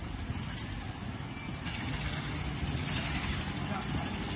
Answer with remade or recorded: recorded